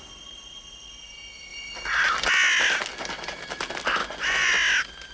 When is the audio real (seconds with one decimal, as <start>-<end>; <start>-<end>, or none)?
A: 0.0-4.0; 4.5-5.1

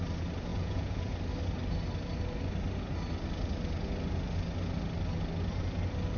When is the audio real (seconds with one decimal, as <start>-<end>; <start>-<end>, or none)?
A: 0.0-0.5; 1.1-6.2